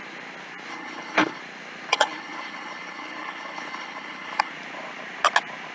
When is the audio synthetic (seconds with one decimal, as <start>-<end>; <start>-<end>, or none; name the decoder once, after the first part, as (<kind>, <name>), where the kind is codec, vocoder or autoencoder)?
0.7-1.4 (codec, HILCodec); 1.9-4.5